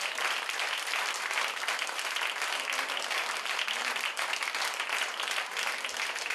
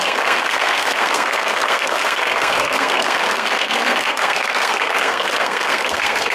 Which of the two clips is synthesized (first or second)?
second